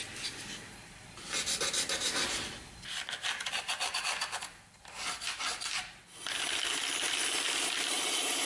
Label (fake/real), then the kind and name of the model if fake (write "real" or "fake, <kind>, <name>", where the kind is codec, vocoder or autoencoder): real